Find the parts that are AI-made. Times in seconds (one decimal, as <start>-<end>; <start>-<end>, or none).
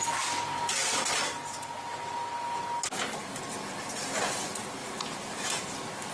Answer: 4.8-5.6